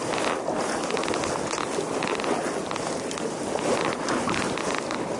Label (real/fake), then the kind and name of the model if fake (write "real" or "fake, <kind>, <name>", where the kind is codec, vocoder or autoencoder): real